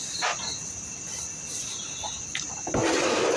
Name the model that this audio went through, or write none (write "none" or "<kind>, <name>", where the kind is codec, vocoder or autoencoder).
none